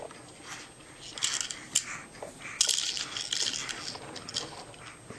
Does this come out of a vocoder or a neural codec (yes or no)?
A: no